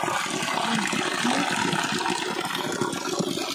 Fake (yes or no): no